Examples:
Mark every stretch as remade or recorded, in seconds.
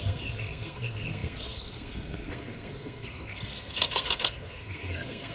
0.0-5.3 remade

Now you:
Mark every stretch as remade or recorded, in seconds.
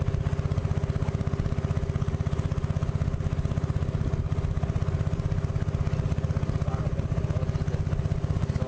0.0-8.7 recorded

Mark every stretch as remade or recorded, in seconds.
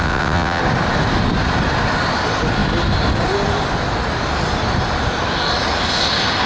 0.0-0.6 remade; 0.6-6.5 recorded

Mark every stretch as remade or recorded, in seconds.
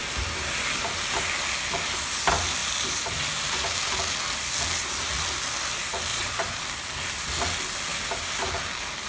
0.0-6.1 recorded; 6.1-6.6 remade; 6.6-9.1 recorded